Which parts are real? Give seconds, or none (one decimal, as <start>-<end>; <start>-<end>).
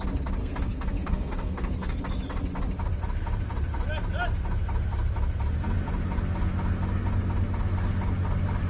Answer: 0.0-0.4; 2.0-8.7